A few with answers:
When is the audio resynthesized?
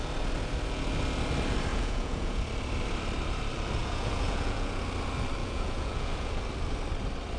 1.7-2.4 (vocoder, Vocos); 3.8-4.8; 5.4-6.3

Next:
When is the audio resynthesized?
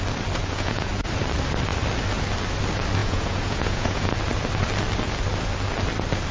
0.4-0.9 (vocoder, Vocos); 3.0-4.1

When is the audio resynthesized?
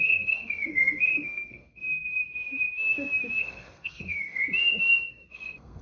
0.0-2.1 (codec, SNAC); 3.4-4.4; 5.3-5.8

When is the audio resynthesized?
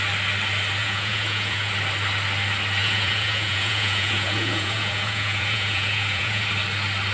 0.8-1.7 (vocoder, Vocos); 2.8-6.5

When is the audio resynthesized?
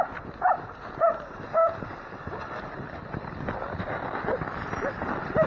none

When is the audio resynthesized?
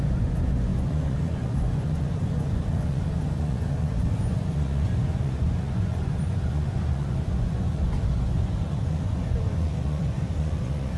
0.0-11.0 (vocoder, Vocos)